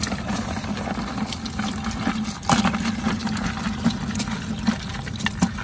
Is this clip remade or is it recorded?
recorded